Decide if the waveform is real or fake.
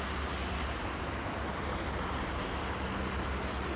real